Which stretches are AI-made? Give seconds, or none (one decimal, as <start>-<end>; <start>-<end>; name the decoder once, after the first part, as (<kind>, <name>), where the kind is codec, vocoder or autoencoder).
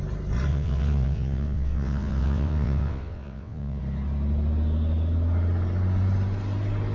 0.5-3.8 (vocoder, WaveNeXt)